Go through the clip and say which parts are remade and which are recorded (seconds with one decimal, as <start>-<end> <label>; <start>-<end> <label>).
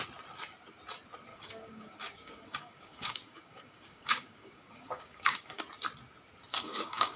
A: 0.0-1.3 recorded; 1.3-5.6 remade; 5.6-6.5 recorded; 6.5-7.2 remade